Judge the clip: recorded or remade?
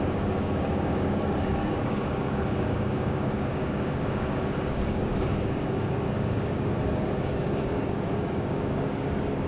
remade